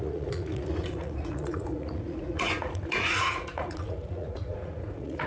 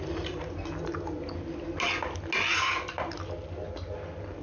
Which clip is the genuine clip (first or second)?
second